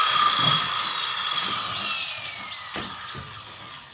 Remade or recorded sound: recorded